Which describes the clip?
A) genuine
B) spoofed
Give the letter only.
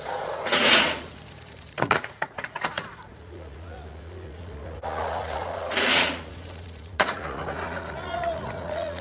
B